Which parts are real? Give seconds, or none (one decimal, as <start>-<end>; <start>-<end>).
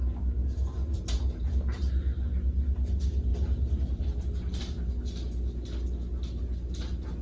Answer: 0.0-0.4; 1.9-3.3; 4.0-7.2